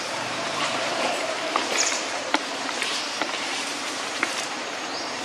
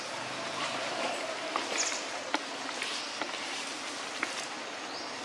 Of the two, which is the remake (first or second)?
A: first